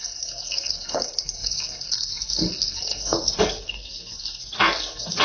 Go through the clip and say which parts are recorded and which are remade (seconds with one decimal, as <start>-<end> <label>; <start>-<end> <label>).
0.0-5.2 remade